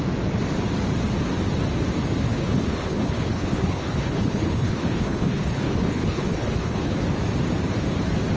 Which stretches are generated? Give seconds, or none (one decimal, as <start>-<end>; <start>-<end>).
2.3-7.0